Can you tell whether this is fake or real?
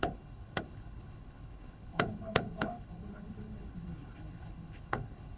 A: fake